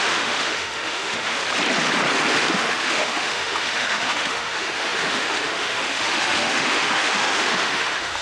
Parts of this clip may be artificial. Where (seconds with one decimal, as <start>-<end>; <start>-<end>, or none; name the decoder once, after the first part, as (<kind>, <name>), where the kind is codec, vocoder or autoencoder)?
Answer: 0.0-1.4 (autoencoder, DAC-VAE); 2.5-8.2